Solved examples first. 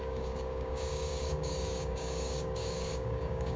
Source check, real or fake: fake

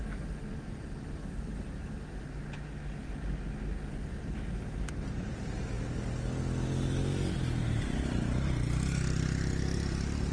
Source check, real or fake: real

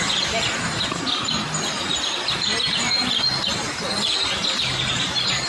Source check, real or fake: real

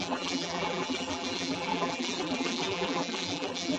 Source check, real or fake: fake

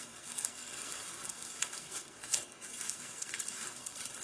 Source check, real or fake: fake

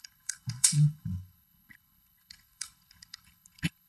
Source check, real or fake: fake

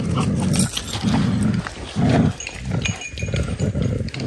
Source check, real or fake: real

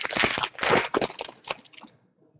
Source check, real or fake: real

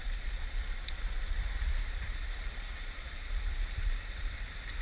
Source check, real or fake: real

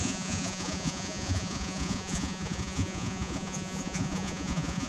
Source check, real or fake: fake